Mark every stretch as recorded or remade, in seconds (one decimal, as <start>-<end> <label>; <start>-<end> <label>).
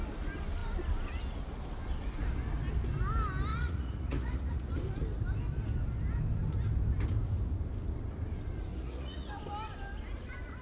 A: 0.0-3.5 recorded; 3.5-4.7 remade; 4.7-8.7 recorded; 8.7-9.4 remade; 9.4-10.6 recorded